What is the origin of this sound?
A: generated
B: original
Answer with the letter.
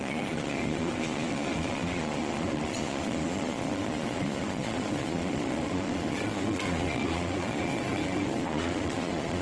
A